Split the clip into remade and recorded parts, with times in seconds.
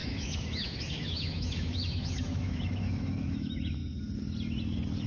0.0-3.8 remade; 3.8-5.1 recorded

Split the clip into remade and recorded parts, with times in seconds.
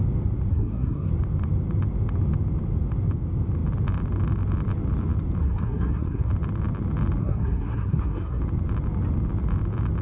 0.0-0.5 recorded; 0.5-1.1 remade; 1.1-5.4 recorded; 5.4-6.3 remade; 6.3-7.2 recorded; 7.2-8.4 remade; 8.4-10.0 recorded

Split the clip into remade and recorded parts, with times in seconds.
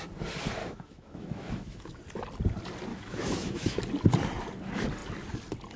0.0-0.6 recorded; 0.6-2.0 remade; 2.0-2.9 recorded; 2.9-3.8 remade; 3.8-5.8 recorded